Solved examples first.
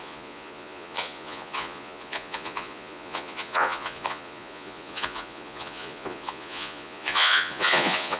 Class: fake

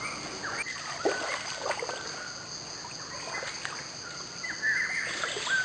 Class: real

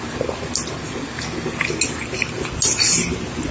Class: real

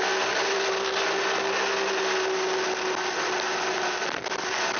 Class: real